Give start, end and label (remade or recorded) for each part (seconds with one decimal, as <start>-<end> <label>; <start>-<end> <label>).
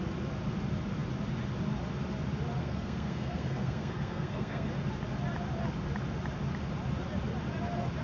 0.0-2.6 recorded; 2.6-4.7 remade; 4.7-8.0 recorded